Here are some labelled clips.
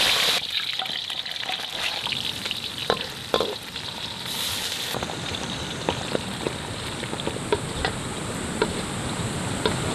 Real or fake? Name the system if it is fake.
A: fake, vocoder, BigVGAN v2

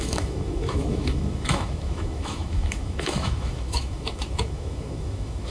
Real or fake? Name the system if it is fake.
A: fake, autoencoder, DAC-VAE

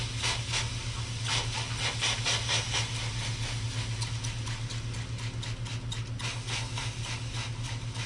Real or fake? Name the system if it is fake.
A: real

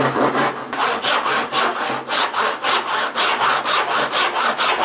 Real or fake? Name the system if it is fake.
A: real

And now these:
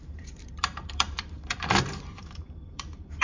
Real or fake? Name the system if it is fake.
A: fake, vocoder, BigVGAN v2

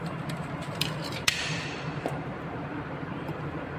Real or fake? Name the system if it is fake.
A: fake, vocoder, BigVGAN v2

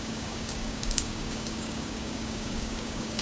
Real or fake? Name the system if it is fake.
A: fake, codec, DAC